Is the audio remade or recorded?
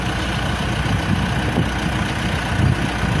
recorded